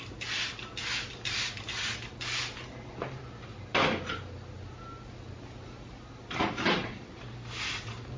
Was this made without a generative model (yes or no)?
yes